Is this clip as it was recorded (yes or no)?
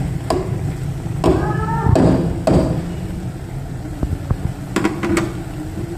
yes